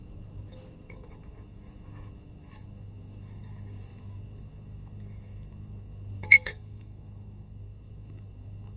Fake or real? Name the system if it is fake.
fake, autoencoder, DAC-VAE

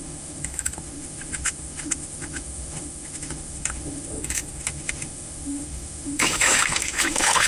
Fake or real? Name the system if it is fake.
fake, autoencoder, DAC-VAE